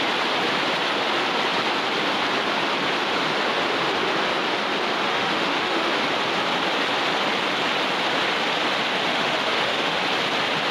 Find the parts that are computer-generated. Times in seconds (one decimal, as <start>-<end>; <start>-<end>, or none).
5.1-5.9; 9.1-10.0